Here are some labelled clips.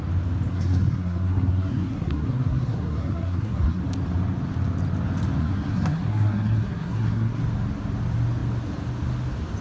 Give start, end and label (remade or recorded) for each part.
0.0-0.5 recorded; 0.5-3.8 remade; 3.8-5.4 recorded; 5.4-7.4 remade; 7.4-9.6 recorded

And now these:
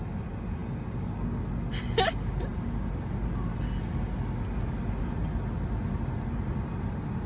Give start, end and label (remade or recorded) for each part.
0.0-7.3 recorded

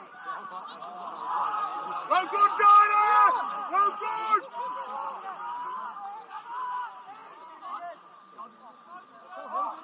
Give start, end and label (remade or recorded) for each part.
0.0-7.2 recorded; 7.2-8.0 remade; 8.0-9.8 recorded